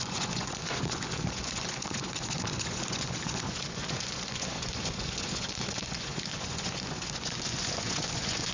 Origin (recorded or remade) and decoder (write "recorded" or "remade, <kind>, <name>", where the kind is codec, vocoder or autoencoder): remade, vocoder, Vocos